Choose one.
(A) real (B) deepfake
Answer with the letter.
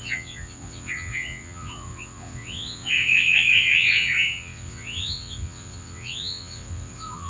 B